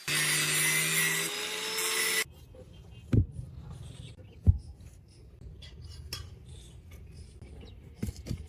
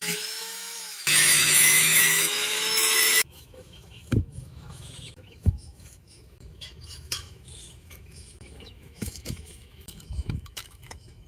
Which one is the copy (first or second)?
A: second